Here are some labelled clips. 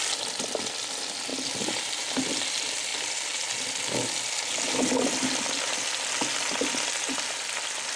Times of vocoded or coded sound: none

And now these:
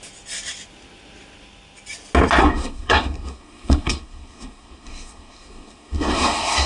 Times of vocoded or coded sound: 2.4-6.7 (codec, SNAC)

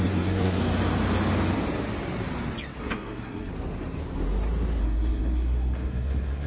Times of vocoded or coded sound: 0.0-0.6 (codec, SNAC); 2.8-3.5; 4.8-6.5